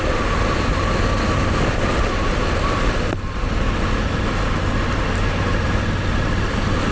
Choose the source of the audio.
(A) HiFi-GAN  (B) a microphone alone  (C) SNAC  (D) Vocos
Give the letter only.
B